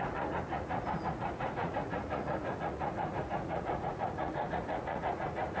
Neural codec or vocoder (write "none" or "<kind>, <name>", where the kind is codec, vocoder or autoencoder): vocoder, Vocos